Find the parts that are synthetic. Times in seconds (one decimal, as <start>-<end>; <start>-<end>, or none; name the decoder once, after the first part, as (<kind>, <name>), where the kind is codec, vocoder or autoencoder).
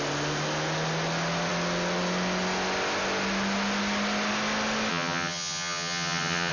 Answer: 4.9-6.5 (vocoder, HiFi-GAN)